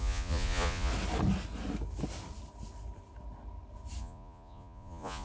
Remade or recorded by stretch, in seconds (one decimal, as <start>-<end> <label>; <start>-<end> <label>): 0.0-0.9 remade; 0.9-4.0 recorded; 4.0-5.2 remade